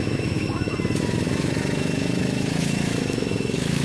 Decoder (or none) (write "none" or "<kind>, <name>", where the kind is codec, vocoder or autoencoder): autoencoder, DAC-VAE